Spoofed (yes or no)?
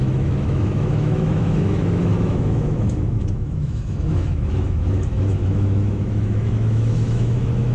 yes